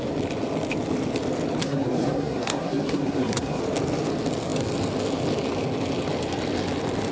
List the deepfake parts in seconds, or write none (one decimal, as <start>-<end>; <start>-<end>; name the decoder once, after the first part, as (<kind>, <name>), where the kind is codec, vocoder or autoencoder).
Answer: 1.6-3.6 (codec, SNAC)